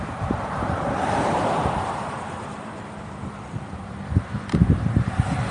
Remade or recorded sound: remade